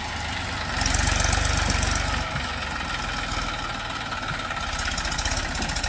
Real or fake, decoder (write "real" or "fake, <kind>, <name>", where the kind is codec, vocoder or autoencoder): real